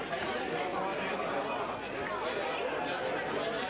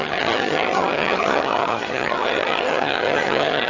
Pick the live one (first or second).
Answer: first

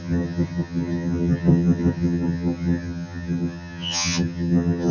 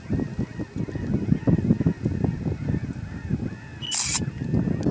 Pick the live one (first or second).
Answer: second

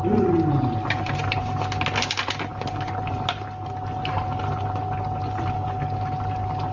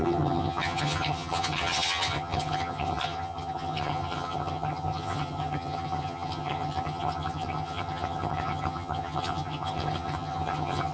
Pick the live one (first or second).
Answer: first